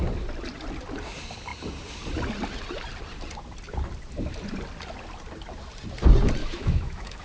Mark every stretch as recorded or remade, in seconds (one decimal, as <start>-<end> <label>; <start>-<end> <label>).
0.0-6.4 recorded; 6.4-7.2 remade